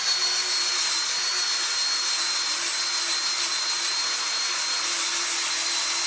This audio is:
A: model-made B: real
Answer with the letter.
B